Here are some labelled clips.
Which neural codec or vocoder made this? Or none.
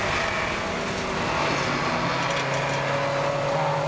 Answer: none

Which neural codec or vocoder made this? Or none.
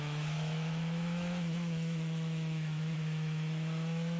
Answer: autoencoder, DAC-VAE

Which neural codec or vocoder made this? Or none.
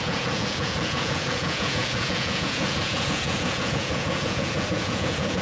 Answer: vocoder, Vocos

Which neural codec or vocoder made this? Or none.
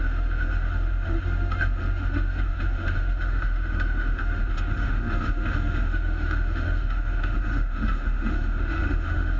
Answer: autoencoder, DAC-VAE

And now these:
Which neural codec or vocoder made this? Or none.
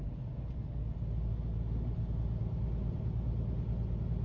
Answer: none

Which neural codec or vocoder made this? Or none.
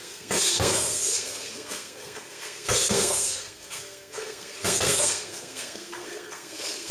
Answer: codec, SNAC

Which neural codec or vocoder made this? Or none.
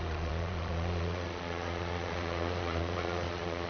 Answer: vocoder, Vocos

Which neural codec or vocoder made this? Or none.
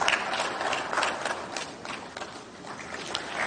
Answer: none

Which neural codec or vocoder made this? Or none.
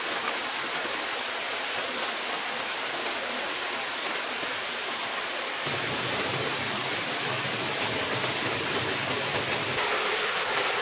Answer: vocoder, BigVGAN v2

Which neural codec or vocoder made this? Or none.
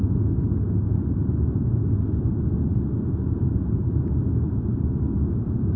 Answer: none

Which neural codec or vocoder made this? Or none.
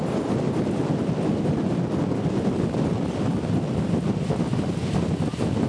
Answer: none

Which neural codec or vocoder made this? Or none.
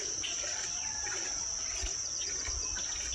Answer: none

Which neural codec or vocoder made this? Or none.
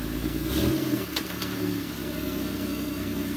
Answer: codec, SNAC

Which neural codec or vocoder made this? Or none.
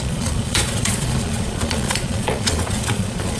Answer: vocoder, Vocos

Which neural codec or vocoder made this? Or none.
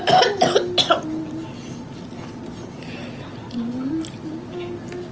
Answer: none